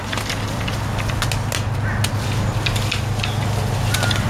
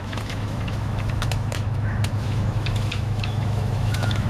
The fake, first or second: second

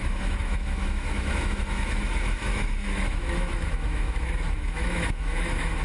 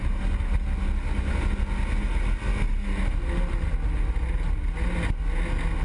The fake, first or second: first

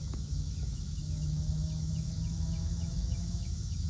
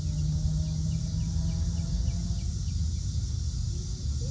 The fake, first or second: first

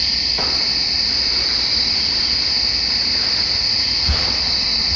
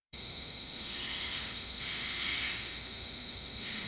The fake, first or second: second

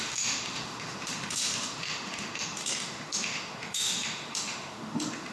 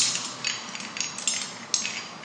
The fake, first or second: first